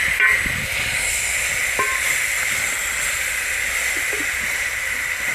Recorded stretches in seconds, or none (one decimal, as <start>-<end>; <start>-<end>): 0.0-5.3

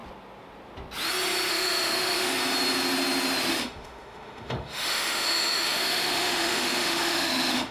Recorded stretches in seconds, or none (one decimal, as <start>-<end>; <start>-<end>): 0.0-1.5; 2.3-3.5